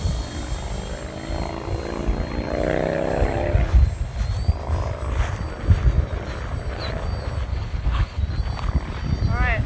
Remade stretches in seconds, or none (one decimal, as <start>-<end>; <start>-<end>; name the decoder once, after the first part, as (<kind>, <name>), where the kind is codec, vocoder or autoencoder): 7.5-8.2 (codec, HILCodec)